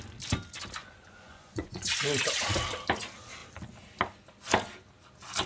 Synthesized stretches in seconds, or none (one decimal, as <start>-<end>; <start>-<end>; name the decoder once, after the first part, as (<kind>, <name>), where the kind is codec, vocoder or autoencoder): 0.8-1.9 (vocoder, Vocos)